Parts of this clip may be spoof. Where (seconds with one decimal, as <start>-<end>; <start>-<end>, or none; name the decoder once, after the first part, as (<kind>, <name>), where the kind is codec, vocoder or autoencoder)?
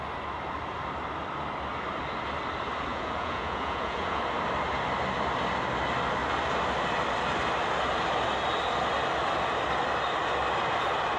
2.9-4.2 (vocoder, Vocos)